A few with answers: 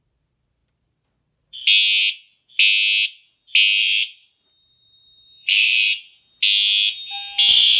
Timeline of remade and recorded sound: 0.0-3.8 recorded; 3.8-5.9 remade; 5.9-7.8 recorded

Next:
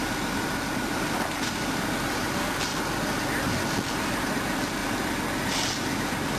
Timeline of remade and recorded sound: 0.0-2.7 remade; 2.7-4.2 recorded; 4.2-4.8 remade; 4.8-6.4 recorded